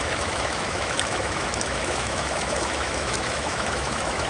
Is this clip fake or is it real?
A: fake